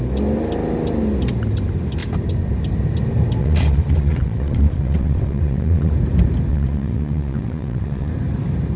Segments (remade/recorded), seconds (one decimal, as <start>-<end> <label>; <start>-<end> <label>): 0.0-3.4 recorded; 3.4-5.9 remade; 5.9-6.5 recorded; 6.5-8.1 remade; 8.1-8.8 recorded